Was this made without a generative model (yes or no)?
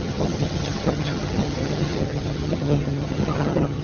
no